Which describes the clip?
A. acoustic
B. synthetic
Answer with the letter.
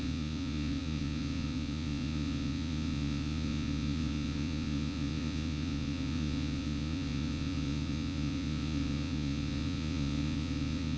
B